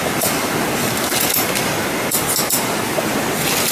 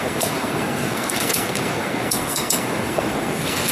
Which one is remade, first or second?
second